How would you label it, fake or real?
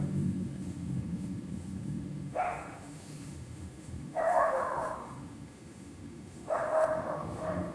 fake